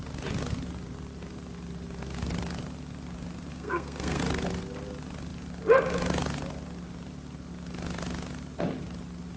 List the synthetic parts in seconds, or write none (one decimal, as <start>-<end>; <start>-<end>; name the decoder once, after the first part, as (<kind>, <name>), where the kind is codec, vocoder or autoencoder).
3.5-4.2 (codec, SNAC)